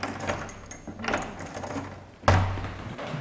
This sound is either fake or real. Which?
real